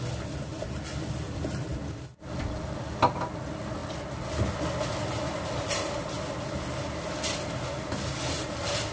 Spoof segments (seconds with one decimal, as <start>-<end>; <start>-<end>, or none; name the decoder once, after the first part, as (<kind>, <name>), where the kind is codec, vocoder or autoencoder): none